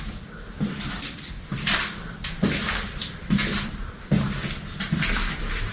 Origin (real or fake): real